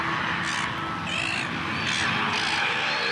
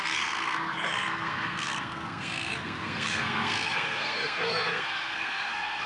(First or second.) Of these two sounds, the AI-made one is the second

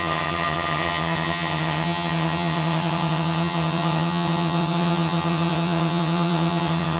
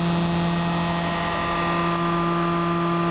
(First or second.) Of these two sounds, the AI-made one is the first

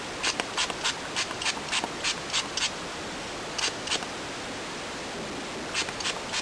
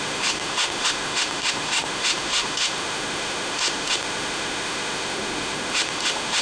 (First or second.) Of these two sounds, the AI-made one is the second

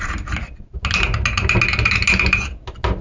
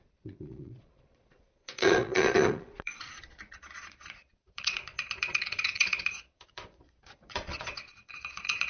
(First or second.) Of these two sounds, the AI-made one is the second